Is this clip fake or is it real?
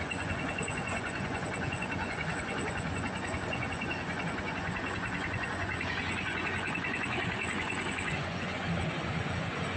fake